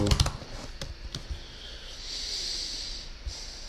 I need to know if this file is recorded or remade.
recorded